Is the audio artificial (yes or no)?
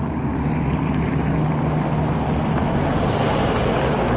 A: no